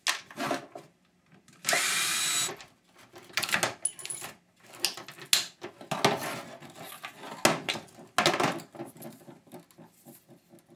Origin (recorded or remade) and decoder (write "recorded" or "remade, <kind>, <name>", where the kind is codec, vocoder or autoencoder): recorded